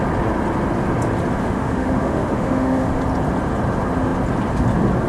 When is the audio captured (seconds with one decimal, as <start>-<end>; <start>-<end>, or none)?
0.0-1.4; 3.0-5.1